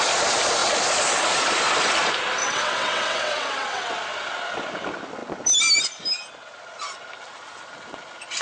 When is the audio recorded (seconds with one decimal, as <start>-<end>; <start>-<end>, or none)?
0.0-2.4; 3.9-8.4